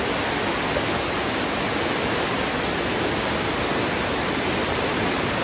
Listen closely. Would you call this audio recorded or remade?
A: recorded